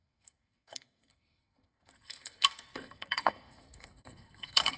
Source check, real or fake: fake